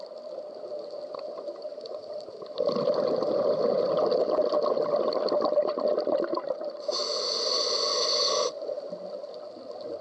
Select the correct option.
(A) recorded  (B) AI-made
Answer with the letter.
A